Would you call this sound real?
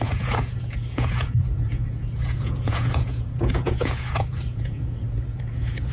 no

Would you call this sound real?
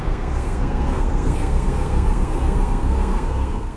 no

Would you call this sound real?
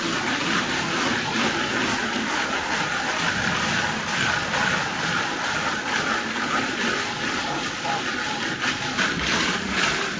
no